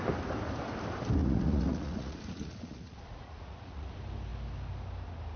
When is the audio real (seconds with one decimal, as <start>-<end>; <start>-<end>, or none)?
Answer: 0.0-1.2; 3.9-5.4